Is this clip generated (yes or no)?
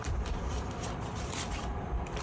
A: yes